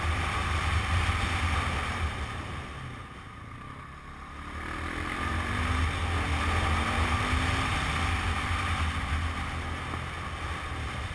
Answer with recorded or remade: recorded